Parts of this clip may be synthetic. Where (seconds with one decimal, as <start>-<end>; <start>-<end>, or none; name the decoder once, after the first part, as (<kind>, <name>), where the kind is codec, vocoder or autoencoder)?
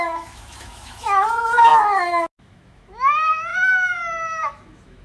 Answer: 0.0-5.0 (autoencoder, DAC-VAE)